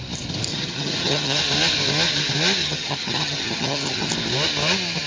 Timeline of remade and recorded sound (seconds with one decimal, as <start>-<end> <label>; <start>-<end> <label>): 0.0-0.5 recorded; 0.5-1.4 remade; 1.4-2.6 recorded; 2.6-4.1 remade; 4.1-5.1 recorded